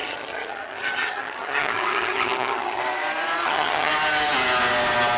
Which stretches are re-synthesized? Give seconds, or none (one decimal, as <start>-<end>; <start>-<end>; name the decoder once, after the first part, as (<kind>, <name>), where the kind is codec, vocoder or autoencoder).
0.0-2.8 (vocoder, HiFi-GAN); 3.4-3.9